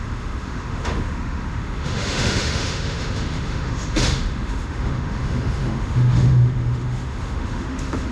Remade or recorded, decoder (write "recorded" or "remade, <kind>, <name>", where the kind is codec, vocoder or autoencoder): remade, autoencoder, DAC-VAE